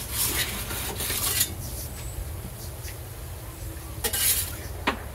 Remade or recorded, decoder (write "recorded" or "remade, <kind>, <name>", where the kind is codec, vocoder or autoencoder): recorded